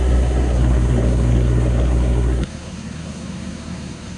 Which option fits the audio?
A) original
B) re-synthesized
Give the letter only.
B